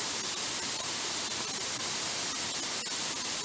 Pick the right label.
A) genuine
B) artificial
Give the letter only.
A